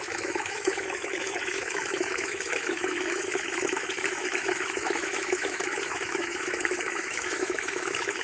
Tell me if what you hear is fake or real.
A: fake